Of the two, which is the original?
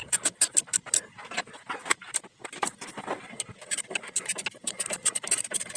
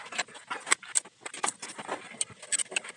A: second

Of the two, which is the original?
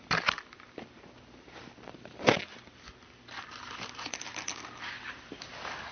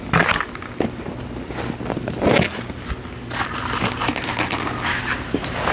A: second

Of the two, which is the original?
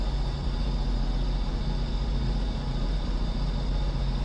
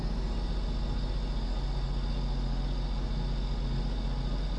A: second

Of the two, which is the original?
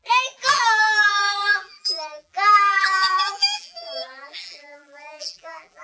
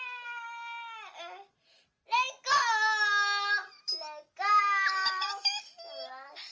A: second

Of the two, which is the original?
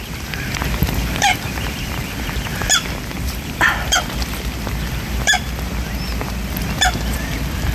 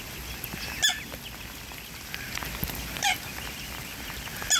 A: second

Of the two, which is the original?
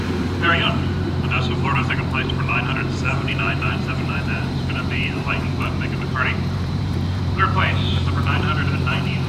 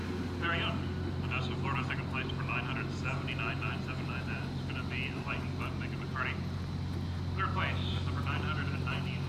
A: second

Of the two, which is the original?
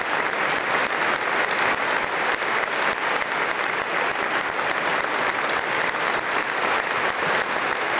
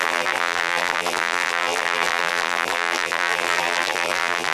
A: first